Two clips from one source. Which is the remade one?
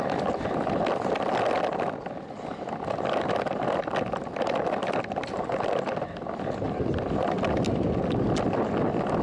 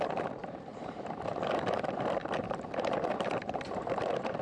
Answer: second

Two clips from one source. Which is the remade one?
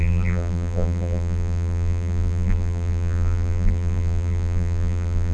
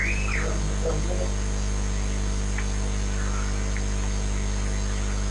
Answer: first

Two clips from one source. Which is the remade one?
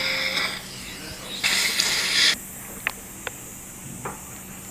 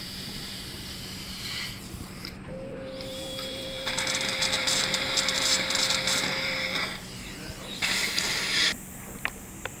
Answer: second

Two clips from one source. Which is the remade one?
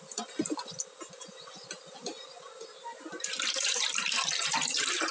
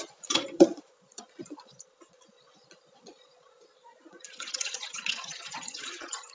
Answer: second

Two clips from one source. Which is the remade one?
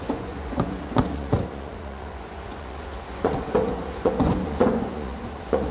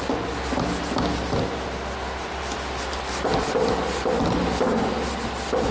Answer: first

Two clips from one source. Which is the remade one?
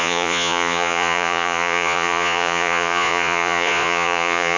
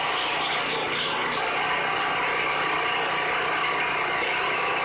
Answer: first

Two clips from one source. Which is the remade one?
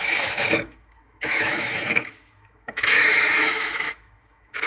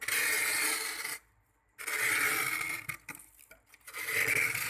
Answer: first